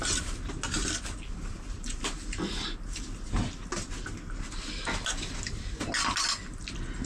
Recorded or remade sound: recorded